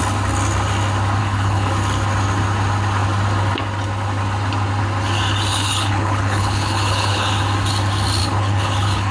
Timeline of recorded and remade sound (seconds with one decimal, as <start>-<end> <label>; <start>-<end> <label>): 0.0-1.2 recorded; 1.2-1.7 remade; 1.7-5.5 recorded; 5.5-7.3 remade; 7.3-8.2 recorded; 8.2-9.1 remade